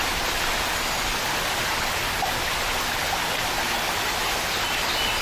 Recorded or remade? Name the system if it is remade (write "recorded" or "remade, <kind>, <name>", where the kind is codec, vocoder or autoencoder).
recorded